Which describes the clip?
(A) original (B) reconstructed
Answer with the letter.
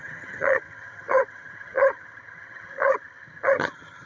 B